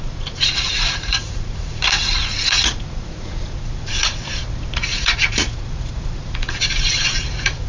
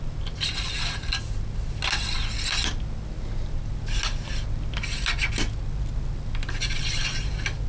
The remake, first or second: first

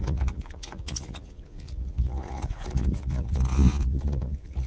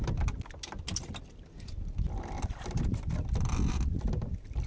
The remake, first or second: first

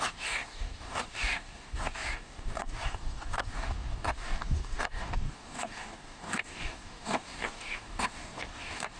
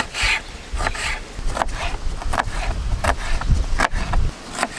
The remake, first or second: first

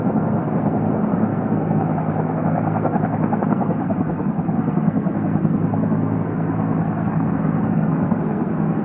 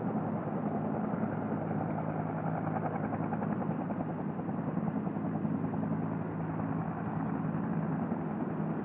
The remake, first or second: first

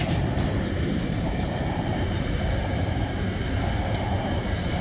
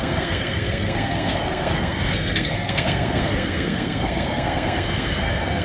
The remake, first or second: second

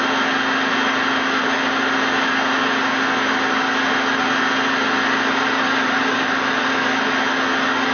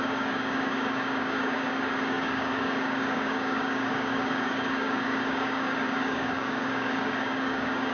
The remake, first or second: second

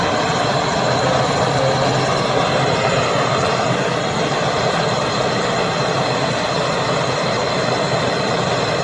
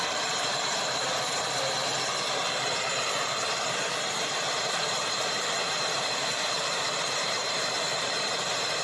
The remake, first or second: second